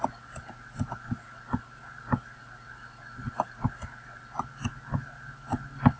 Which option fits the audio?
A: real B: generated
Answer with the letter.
A